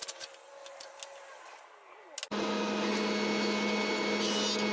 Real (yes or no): yes